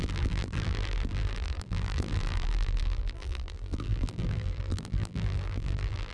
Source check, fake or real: fake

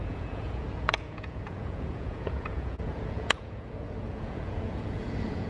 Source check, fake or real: fake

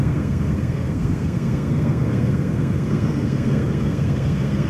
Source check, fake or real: fake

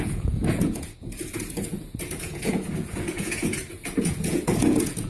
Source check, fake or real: fake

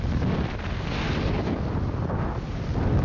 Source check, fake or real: real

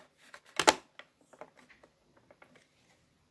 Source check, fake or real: real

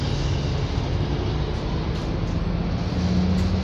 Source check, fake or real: real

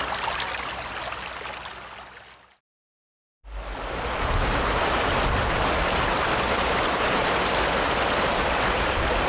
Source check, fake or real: real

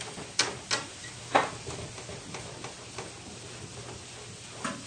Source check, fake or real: real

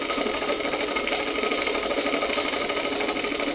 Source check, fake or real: real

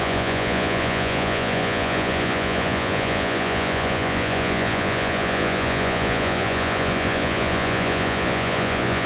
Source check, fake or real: fake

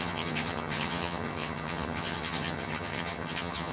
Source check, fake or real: fake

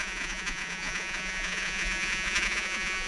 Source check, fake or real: fake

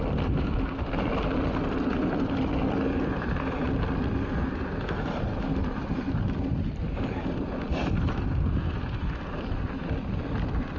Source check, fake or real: real